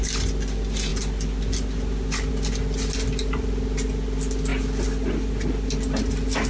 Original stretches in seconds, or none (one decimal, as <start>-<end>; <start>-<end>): 0.0-6.5